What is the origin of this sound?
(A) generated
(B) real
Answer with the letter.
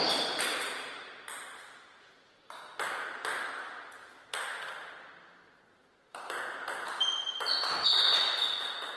B